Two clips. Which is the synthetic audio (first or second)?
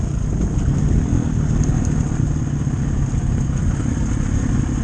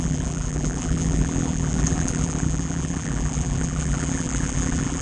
second